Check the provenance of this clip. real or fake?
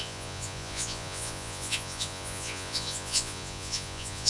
fake